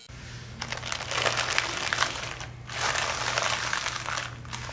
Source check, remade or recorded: recorded